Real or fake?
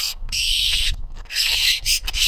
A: fake